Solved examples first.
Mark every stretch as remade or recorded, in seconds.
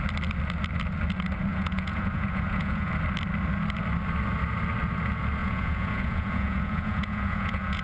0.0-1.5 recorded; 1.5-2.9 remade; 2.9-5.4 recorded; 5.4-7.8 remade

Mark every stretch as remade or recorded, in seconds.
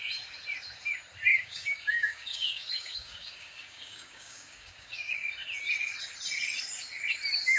0.0-1.3 recorded; 1.3-5.3 remade; 5.3-7.6 recorded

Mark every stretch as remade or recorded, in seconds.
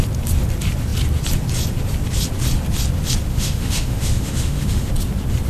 0.0-3.3 recorded; 3.3-4.9 remade; 4.9-5.5 recorded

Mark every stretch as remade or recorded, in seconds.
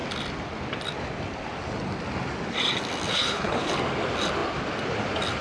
0.0-3.1 recorded; 3.1-3.7 remade; 3.7-5.4 recorded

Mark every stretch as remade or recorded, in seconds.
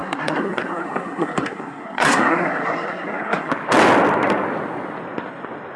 0.0-3.5 remade; 3.5-5.8 recorded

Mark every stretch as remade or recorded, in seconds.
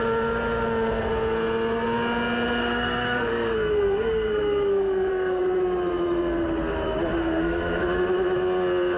0.0-2.6 recorded; 2.6-5.4 remade; 5.4-7.2 recorded; 7.2-7.8 remade; 7.8-9.0 recorded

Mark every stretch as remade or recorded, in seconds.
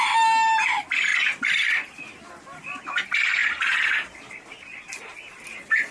0.0-5.9 recorded